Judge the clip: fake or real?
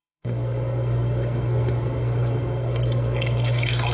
fake